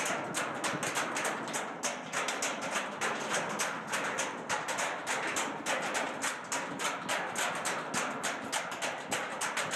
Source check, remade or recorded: recorded